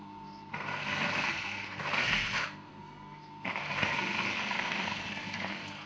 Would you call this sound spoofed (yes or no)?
yes